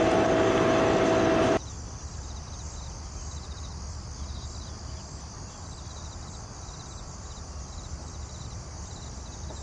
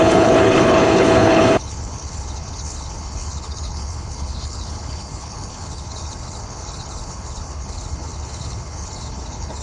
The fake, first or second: second